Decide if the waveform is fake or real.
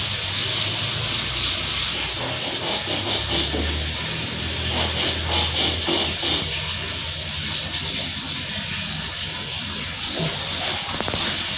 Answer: real